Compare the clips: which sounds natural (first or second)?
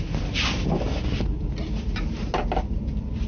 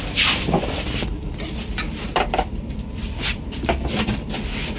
first